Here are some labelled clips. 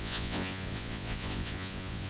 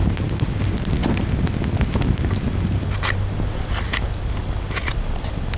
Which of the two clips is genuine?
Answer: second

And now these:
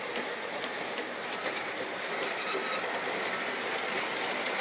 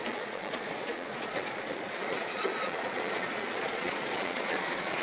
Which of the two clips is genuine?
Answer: first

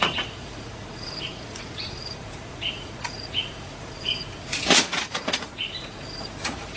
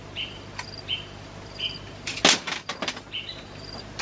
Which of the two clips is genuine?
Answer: second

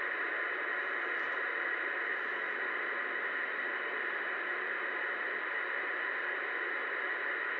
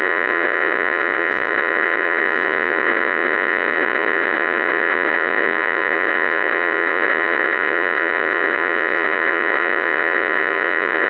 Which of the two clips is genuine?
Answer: first